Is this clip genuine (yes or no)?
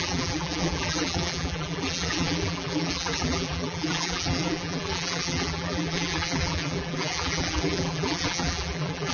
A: no